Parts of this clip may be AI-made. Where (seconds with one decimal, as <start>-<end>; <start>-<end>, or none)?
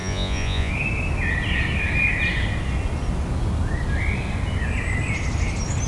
0.0-0.7